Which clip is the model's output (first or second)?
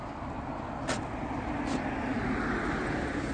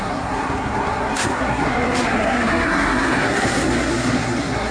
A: second